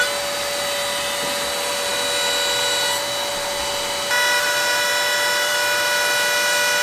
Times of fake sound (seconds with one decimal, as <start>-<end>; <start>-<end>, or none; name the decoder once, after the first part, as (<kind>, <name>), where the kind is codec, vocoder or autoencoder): none

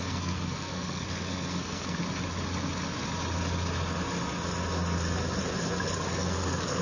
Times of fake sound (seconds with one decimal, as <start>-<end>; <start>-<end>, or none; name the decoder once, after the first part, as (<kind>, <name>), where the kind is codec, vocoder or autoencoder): 0.0-2.0 (codec, SNAC); 6.1-6.8

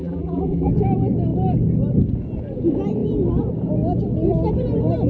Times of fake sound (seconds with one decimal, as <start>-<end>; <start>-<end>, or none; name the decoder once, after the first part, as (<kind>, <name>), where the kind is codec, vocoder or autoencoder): 0.0-0.7 (vocoder, BigVGAN v2)

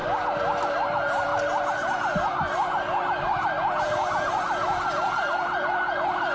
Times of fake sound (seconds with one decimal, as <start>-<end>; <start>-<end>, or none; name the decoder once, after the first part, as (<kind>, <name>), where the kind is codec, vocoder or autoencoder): 0.0-1.3 (vocoder, BigVGAN v2); 5.1-6.3

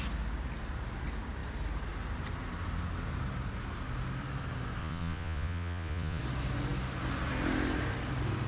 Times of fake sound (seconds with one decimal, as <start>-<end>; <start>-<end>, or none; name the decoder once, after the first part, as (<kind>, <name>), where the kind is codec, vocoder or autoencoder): 4.8-6.2 (vocoder, Vocos)

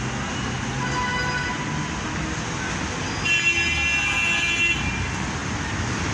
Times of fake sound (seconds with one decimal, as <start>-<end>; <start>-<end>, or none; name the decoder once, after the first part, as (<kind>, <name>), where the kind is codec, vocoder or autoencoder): none

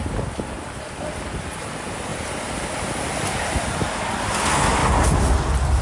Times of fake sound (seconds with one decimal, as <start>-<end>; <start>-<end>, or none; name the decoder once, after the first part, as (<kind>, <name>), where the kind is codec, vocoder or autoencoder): none

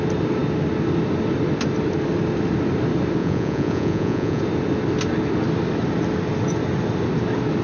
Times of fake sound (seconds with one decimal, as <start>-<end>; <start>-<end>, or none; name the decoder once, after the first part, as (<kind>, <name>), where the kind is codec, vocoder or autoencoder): 3.2-4.4 (vocoder, Vocos)